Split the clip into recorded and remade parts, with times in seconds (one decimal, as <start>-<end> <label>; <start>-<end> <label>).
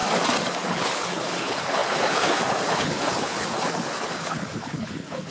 0.0-0.5 recorded; 0.5-5.3 remade